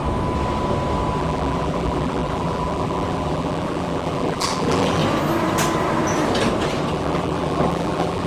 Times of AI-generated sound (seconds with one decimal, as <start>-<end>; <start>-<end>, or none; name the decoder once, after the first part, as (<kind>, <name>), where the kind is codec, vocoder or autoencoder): 1.2-5.0 (vocoder, BigVGAN v2); 6.9-8.3